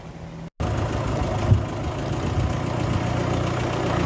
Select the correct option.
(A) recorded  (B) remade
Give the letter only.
A